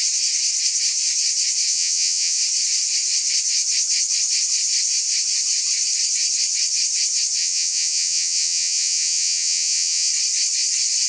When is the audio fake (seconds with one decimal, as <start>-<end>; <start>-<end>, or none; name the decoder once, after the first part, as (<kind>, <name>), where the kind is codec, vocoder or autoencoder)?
1.7-2.4 (vocoder, Vocos); 7.4-10.1

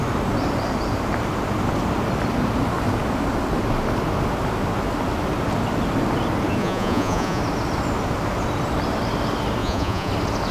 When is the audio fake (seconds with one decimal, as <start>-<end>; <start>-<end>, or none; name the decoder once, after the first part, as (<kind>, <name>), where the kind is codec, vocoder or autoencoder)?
6.6-7.4 (vocoder, Vocos); 9.6-10.1

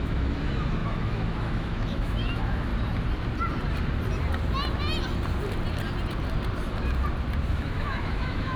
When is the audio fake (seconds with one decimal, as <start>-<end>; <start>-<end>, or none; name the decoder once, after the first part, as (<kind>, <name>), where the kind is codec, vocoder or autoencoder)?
0.0-2.7 (autoencoder, DAC-VAE); 7.5-8.6

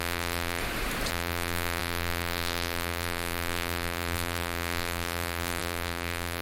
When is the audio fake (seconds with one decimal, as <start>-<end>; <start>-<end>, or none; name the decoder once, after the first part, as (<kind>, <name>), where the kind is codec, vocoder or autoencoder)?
0.0-0.6 (vocoder, BigVGAN v2); 1.1-6.4

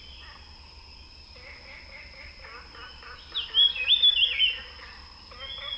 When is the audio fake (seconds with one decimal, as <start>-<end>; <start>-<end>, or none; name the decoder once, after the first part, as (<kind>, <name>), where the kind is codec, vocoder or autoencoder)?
none

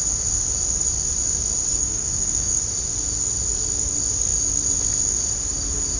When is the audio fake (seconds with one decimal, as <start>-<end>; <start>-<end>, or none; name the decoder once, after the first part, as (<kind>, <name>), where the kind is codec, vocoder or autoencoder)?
1.7-2.6 (codec, DAC)